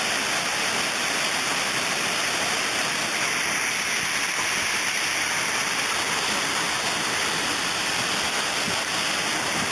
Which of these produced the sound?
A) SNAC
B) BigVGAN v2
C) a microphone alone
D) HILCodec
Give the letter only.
C